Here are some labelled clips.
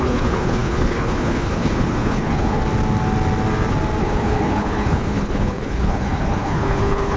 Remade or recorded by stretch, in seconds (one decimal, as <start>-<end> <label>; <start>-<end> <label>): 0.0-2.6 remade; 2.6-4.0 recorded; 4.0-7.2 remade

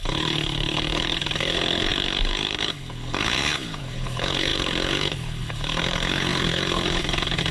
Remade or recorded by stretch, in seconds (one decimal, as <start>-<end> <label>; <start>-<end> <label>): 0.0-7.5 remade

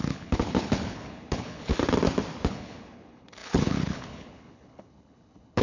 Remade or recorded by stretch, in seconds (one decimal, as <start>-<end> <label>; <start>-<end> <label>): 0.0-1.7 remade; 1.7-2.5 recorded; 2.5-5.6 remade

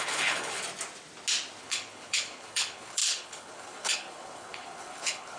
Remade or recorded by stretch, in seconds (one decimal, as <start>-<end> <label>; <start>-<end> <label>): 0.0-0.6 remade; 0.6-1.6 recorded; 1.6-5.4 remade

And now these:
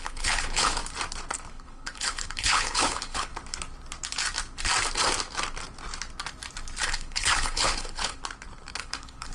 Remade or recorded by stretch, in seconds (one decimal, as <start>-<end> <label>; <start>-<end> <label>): 0.0-0.8 remade; 0.8-1.5 recorded; 1.5-3.3 remade; 3.3-6.8 recorded; 6.8-8.2 remade; 8.2-8.8 recorded; 8.8-9.3 remade